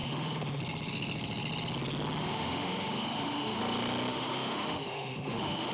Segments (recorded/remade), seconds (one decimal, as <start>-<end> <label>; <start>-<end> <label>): 0.0-0.6 remade; 0.6-2.2 recorded; 2.2-3.6 remade; 3.6-4.1 recorded; 4.1-5.7 remade